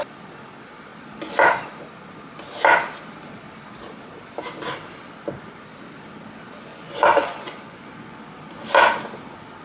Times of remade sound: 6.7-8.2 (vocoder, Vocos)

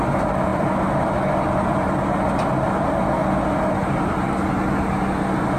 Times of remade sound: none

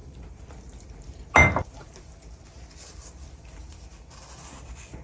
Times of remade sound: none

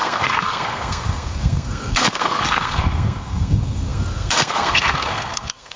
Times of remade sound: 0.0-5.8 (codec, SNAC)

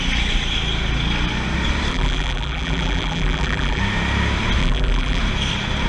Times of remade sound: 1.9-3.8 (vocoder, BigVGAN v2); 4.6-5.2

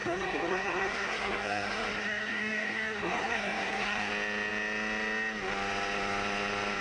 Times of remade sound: 0.0-4.1 (codec, SNAC)